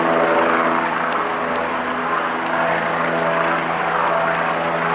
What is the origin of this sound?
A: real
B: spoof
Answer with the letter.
A